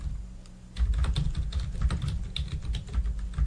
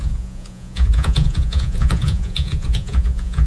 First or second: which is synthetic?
second